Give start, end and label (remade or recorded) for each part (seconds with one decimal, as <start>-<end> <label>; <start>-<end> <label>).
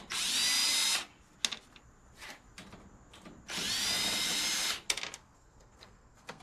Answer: 0.0-5.2 recorded; 5.2-6.4 remade